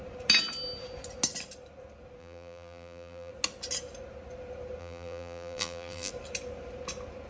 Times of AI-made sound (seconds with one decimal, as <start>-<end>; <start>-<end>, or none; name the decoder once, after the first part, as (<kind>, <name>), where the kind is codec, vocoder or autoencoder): 2.2-3.3 (vocoder, BigVGAN v2); 4.8-6.1